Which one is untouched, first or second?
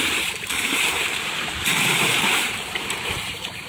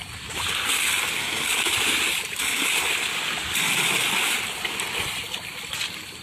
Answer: second